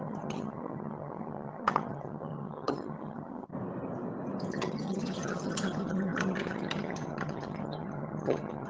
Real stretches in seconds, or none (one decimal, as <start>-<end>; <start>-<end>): 3.5-4.5

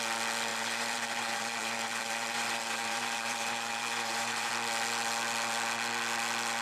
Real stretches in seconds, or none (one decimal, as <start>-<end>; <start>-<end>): 0.0-0.5; 4.5-6.6

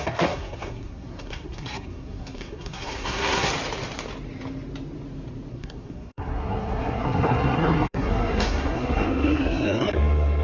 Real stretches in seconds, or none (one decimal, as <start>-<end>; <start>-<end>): 3.5-5.5

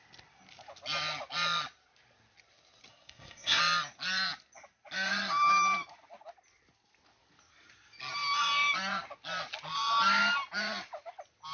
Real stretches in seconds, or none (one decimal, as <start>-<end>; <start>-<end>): 0.0-2.9; 3.6-11.5

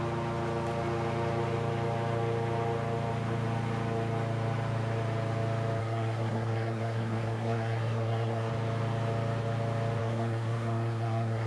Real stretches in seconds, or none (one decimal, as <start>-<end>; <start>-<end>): 0.0-5.8; 8.5-10.0

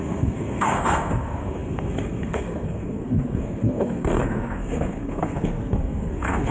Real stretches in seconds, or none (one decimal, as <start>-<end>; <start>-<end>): none

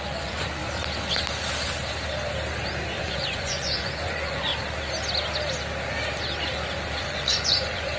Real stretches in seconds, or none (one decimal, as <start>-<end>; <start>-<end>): 0.6-3.0; 4.5-7.0